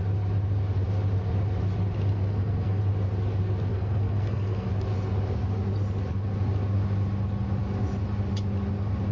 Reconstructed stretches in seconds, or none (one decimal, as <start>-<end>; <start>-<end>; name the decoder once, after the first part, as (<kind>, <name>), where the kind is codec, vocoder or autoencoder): 2.1-2.8 (codec, SNAC); 3.7-4.7

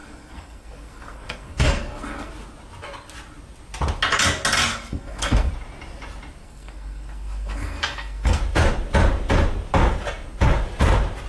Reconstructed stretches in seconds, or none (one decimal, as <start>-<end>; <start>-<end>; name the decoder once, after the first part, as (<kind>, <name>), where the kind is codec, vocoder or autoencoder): 0.0-2.3 (codec, SNAC); 4.7-5.5; 6.4-8.4